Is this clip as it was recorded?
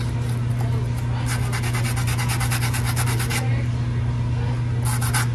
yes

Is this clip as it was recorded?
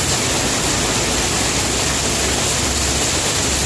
yes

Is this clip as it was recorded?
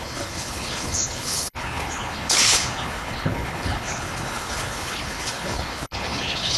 no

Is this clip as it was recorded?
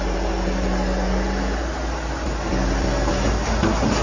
yes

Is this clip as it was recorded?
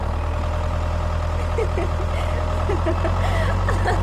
yes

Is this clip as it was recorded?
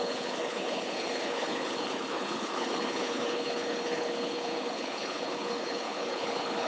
no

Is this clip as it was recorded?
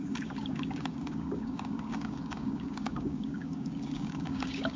no